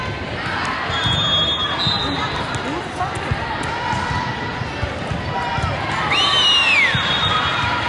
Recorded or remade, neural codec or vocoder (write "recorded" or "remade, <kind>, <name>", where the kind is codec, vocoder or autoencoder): recorded